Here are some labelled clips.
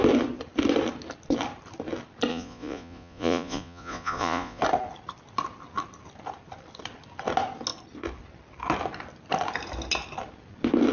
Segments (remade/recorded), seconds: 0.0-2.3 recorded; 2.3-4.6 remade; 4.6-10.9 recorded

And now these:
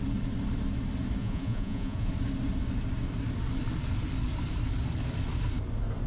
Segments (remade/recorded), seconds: 0.0-1.2 recorded; 1.2-2.1 remade; 2.1-6.1 recorded

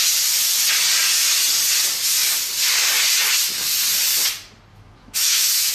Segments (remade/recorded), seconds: 0.0-4.7 recorded; 4.7-5.7 remade

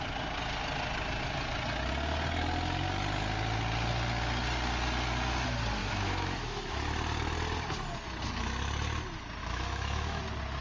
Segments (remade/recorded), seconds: 0.0-5.8 recorded; 5.8-6.9 remade; 6.9-9.4 recorded; 9.4-10.2 remade; 10.2-10.6 recorded

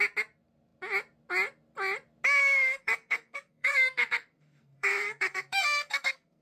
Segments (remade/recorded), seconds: 0.0-2.4 recorded; 2.4-6.4 remade

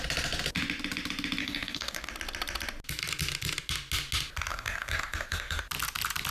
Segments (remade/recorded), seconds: 0.0-1.4 recorded; 1.4-2.1 remade; 2.1-4.5 recorded; 4.5-5.6 remade; 5.6-6.3 recorded

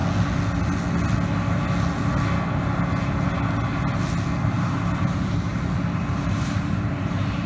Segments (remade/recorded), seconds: 0.0-4.5 recorded; 4.5-5.5 remade; 5.5-6.1 recorded; 6.1-7.5 remade